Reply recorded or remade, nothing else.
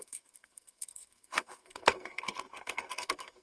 remade